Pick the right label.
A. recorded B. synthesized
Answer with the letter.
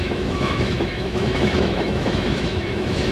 B